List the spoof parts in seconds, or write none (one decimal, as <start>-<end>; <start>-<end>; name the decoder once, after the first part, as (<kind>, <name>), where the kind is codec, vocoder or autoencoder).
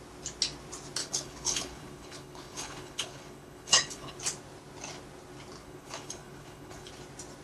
1.0-4.2 (codec, HILCodec); 5.6-6.9